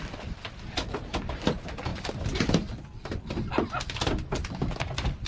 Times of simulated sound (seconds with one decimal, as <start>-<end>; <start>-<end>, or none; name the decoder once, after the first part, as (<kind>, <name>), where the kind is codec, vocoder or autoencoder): none